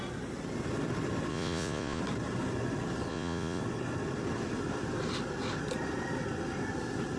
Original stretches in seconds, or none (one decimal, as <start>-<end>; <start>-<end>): 0.0-1.3; 2.0-3.1; 3.6-7.2